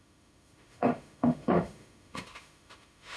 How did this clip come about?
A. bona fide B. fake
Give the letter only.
B